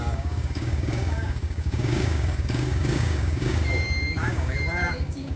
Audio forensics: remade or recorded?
remade